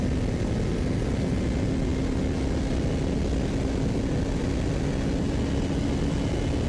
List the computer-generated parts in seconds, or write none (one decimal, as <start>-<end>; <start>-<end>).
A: none